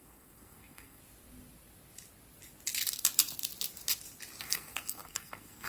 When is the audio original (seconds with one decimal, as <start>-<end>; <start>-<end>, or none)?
1.0-4.4